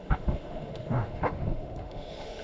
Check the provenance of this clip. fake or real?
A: fake